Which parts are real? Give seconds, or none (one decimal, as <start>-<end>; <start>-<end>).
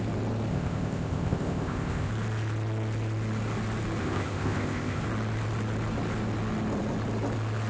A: 0.0-0.5; 2.1-4.0; 5.0-7.7